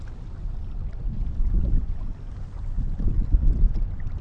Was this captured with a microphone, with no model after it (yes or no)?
yes